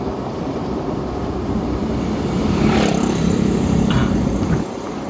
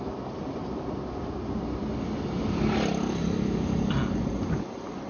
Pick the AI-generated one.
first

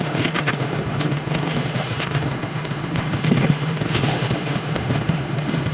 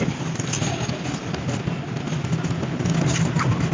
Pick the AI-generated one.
first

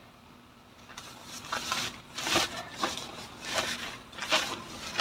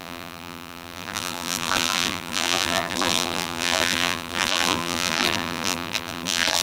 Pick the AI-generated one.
second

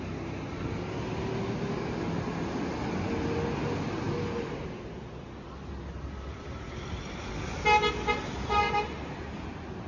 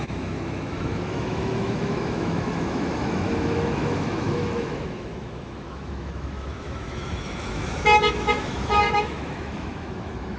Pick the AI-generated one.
second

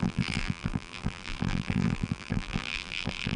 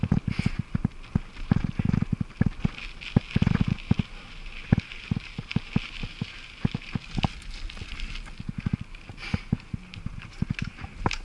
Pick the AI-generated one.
first